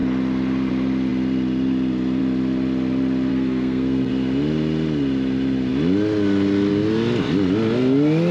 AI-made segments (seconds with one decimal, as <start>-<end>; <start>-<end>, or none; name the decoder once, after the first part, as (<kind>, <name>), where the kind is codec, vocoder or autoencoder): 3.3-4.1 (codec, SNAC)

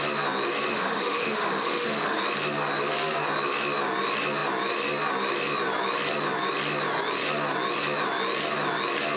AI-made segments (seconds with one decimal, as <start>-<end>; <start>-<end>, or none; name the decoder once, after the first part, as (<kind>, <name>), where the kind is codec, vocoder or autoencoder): 0.7-2.2 (autoencoder, DAC-VAE)

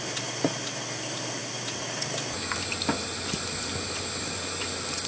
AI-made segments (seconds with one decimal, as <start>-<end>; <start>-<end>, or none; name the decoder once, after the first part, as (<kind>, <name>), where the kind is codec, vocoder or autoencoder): none